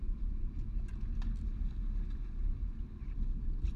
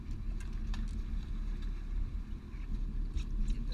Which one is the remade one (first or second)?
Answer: first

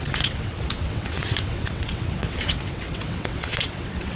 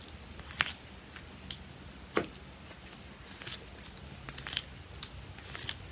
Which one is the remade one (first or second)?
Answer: first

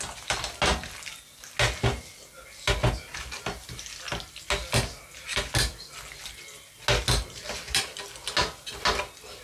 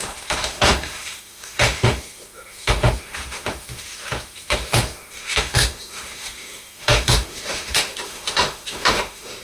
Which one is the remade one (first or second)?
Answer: second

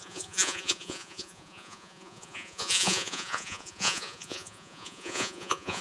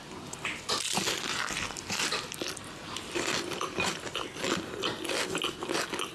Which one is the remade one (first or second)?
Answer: first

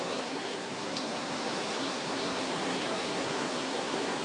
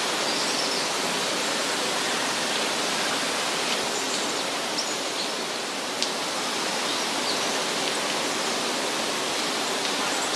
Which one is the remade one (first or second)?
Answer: first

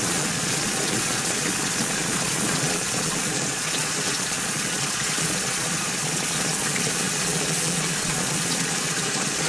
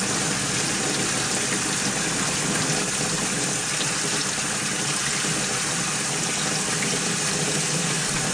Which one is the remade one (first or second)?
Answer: first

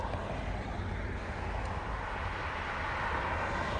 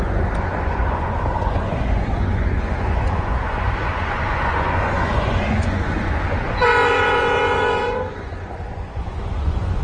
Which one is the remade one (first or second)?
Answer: second